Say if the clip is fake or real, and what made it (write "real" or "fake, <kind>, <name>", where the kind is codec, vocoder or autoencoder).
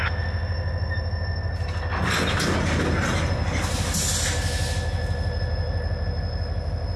real